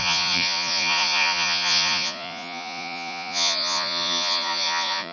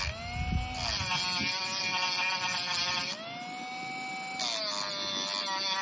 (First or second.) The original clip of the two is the second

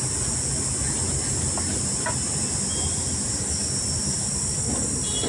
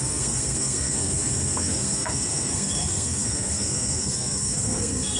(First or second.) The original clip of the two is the first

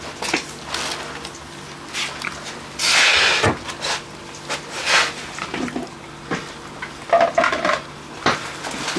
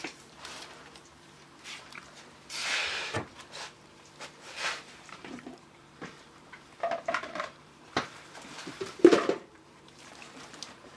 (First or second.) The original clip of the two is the first